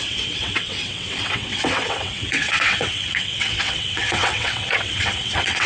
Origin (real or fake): fake